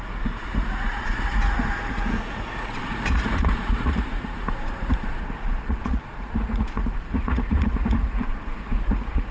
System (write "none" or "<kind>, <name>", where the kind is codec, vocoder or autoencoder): vocoder, Vocos